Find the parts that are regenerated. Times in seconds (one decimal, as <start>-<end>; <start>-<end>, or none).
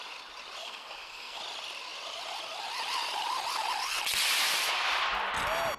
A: 0.6-1.4